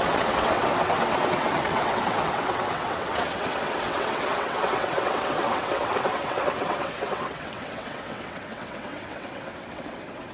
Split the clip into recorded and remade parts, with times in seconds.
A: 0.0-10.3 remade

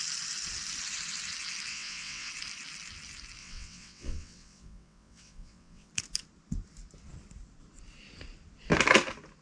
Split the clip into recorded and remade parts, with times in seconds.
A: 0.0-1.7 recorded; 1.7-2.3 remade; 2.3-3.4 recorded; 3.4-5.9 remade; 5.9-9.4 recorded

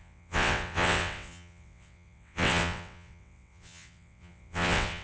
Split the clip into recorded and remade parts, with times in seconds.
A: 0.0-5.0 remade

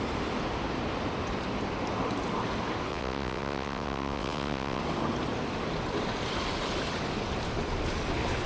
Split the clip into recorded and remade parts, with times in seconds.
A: 0.0-2.9 recorded; 2.9-4.8 remade; 4.8-8.5 recorded

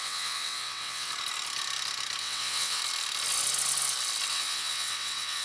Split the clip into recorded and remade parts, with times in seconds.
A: 0.0-1.1 remade; 1.1-2.2 recorded; 2.2-2.8 remade; 2.8-4.3 recorded; 4.3-5.4 remade